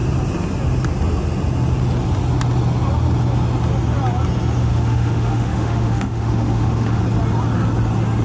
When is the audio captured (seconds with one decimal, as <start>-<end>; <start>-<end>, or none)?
0.0-4.6; 7.0-8.2